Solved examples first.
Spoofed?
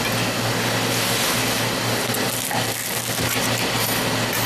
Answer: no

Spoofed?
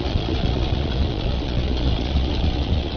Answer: yes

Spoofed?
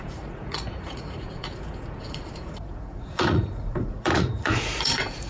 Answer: yes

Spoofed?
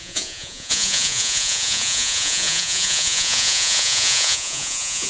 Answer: yes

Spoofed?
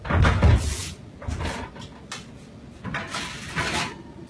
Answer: no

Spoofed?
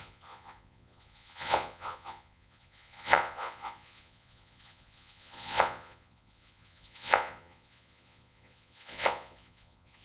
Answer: yes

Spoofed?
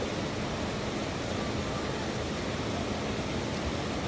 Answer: no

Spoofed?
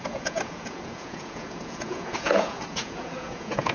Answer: yes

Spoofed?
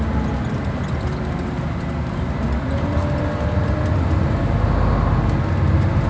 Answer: no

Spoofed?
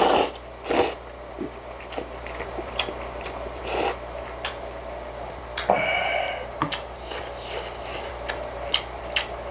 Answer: no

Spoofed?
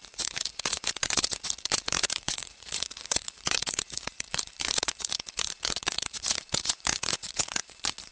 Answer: yes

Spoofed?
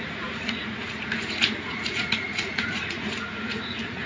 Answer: yes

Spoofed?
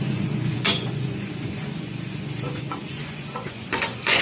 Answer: yes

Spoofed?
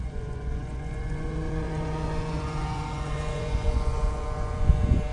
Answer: yes